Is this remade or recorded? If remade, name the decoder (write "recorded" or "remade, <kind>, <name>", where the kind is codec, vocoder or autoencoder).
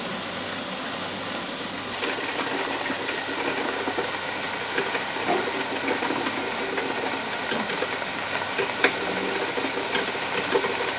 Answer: recorded